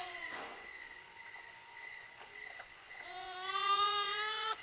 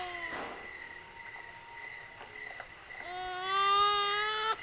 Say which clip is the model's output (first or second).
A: first